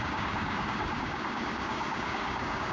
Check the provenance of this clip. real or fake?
fake